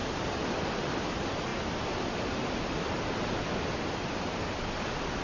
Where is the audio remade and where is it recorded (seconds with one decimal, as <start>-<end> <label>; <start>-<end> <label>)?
0.0-5.2 recorded